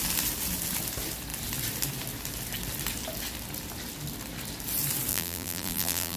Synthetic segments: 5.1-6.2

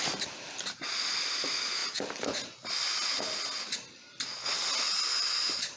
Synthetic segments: none

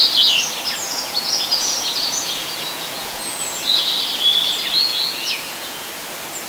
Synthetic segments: 0.8-3.9; 4.9-5.9

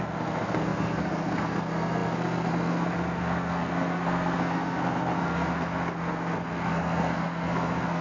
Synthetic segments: 0.0-8.0

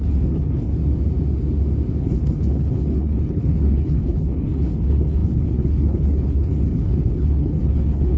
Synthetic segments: 0.0-0.7; 2.0-8.2

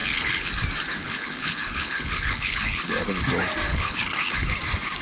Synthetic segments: 0.0-0.5; 1.0-2.8; 3.7-4.5

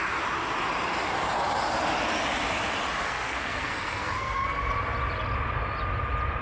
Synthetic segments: 3.0-4.6